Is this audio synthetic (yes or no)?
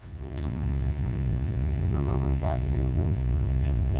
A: yes